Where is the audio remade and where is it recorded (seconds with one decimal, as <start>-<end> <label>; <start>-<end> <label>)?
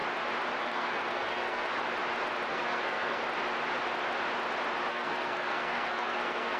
0.0-0.6 recorded; 0.6-1.7 remade; 1.7-2.5 recorded; 2.5-3.2 remade; 3.2-4.9 recorded; 4.9-6.6 remade